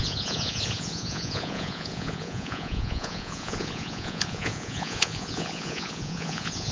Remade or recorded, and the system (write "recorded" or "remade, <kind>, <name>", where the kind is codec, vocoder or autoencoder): remade, vocoder, Vocos